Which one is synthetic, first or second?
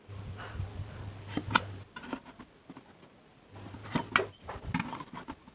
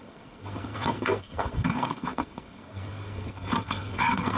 second